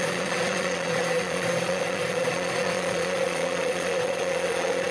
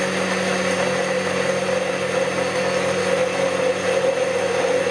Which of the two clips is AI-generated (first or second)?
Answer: first